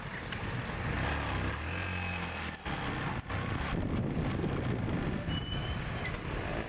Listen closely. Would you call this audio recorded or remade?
recorded